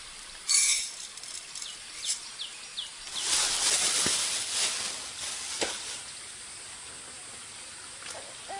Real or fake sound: real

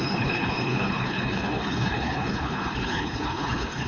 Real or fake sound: fake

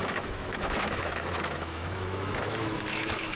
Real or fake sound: fake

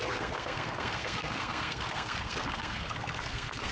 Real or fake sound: fake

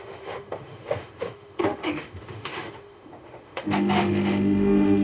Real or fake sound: fake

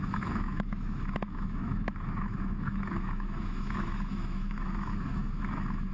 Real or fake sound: fake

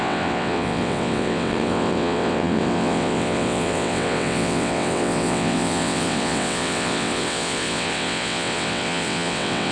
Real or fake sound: fake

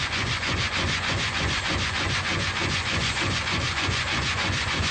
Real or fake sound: fake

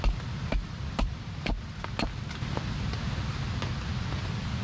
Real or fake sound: real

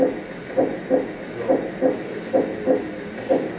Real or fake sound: real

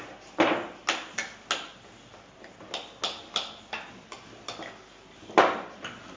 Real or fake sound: real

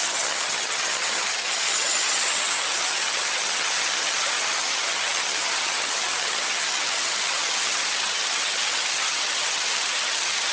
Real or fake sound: fake